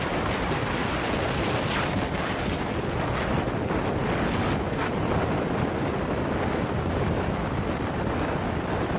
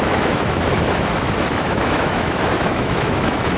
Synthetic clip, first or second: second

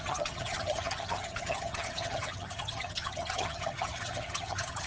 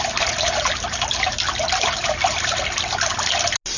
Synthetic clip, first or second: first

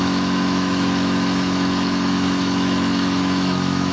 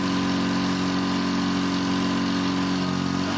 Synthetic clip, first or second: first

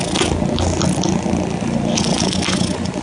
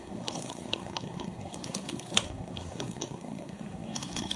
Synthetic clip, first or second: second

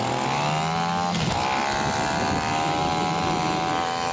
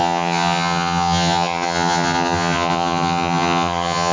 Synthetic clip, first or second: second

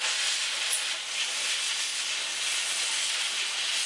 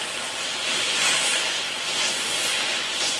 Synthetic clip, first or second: second